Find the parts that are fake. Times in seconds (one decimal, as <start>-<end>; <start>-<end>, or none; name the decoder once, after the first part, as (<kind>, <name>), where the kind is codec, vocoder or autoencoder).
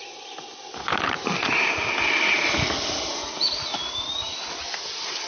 none